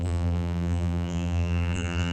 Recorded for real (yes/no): no